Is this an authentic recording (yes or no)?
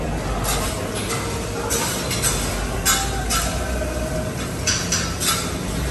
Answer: yes